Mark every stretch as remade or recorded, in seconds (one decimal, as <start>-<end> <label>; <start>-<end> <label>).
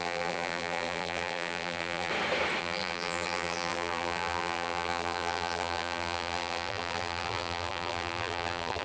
0.0-2.1 remade; 2.1-2.6 recorded; 2.6-8.8 remade